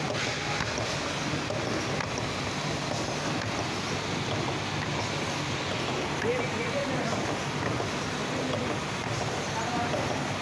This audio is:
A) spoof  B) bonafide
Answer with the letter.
B